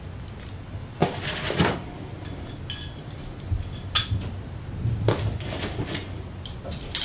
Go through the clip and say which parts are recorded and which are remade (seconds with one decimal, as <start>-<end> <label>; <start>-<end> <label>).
0.0-7.0 recorded